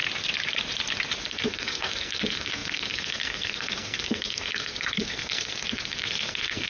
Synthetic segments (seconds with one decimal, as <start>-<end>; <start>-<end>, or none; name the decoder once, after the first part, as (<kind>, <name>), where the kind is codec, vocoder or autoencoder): 1.2-6.7 (codec, SNAC)